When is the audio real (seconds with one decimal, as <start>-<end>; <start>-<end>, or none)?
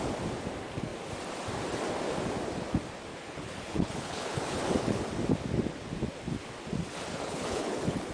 0.0-3.1; 5.0-7.1